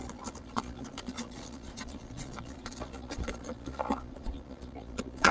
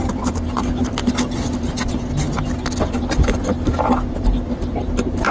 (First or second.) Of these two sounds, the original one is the second